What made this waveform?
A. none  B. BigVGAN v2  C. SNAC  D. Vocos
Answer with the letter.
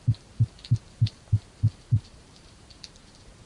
B